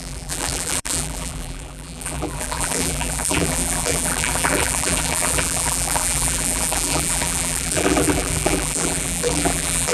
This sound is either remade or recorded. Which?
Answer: remade